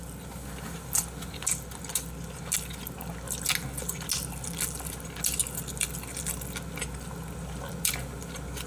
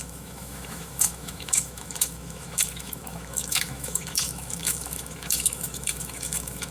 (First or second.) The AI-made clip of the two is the second